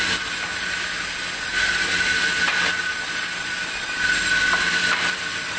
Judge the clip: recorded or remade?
recorded